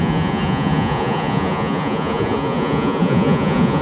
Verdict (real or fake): fake